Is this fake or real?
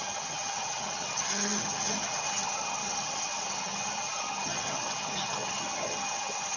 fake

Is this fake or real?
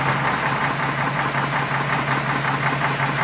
real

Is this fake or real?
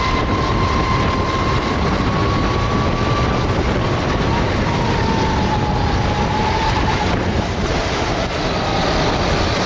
real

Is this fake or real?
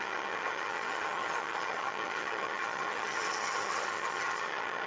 fake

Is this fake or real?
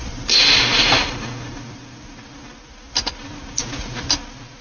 real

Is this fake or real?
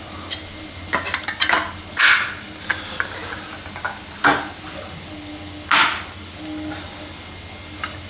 real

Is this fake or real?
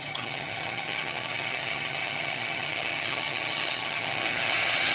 fake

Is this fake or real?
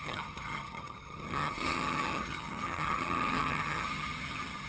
fake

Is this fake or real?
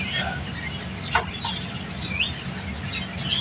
real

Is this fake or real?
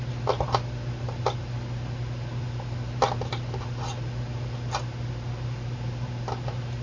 real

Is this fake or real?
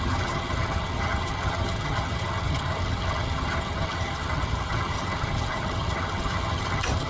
fake